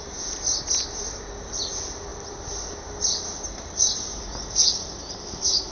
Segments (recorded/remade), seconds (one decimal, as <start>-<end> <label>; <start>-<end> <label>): 0.0-5.7 recorded